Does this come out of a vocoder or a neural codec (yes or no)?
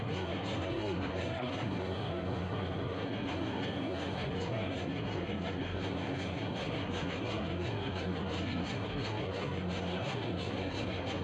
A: yes